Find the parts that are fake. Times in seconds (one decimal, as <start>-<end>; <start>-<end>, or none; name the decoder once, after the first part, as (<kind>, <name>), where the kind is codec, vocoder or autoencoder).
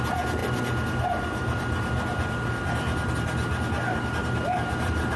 4.2-5.2 (vocoder, BigVGAN v2)